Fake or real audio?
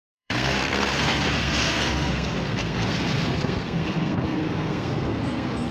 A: fake